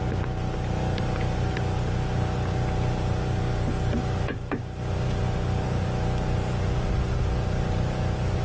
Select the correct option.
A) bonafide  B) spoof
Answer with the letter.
A